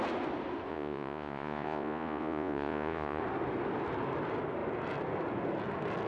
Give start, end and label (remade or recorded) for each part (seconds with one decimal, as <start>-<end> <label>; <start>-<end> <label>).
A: 0.0-0.7 recorded; 0.7-3.2 remade; 3.2-6.1 recorded